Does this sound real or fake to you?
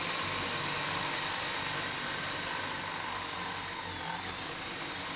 real